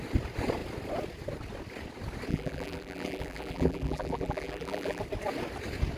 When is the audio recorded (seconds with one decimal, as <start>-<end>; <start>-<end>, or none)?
0.0-2.3; 5.0-6.0